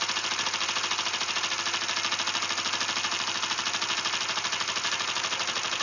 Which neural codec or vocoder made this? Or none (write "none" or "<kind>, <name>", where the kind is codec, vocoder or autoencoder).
none